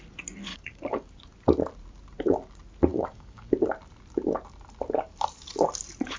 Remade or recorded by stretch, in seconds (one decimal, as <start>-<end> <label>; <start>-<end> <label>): 0.0-0.5 recorded; 0.5-1.1 remade; 1.1-2.9 recorded; 2.9-3.5 remade; 3.5-6.2 recorded